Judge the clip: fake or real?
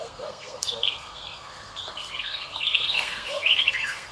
fake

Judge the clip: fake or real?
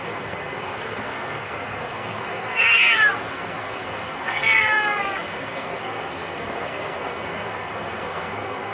fake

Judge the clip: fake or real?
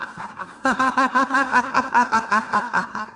fake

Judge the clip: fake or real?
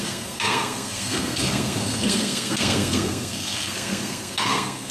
fake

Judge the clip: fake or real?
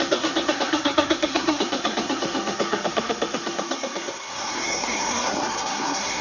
fake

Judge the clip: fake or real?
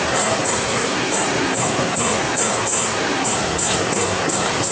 fake